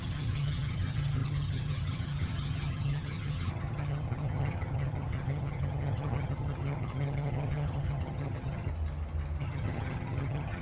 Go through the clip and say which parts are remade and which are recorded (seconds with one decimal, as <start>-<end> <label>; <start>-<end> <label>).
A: 0.0-8.7 remade; 8.7-9.4 recorded; 9.4-10.6 remade